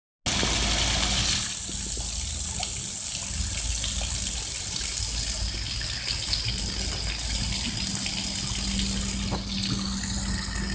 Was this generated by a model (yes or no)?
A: no